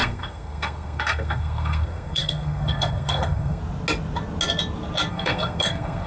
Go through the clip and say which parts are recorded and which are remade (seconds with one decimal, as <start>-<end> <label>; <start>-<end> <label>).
0.0-3.6 remade; 3.6-5.1 recorded; 5.1-6.1 remade